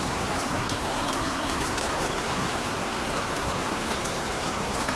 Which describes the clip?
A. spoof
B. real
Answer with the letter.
A